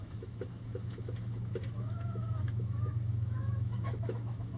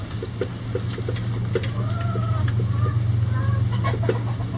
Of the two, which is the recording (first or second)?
second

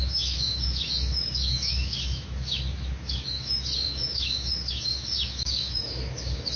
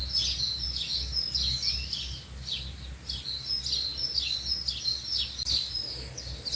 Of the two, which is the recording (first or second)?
second